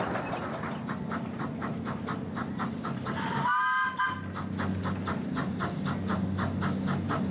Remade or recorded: recorded